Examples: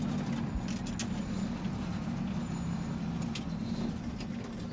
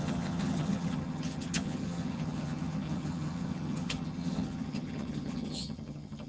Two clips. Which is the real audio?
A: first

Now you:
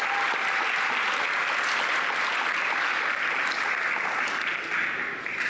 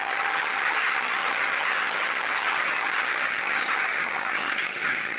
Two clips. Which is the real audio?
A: first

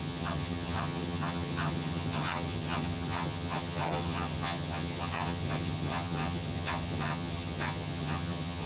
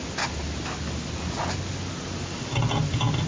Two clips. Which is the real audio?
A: second